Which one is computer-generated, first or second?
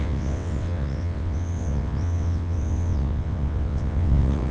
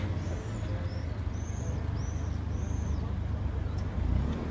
first